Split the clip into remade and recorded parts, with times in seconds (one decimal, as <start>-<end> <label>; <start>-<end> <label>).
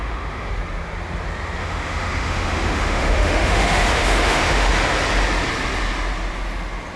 0.0-0.5 remade; 0.5-1.6 recorded; 1.6-4.7 remade; 4.7-7.0 recorded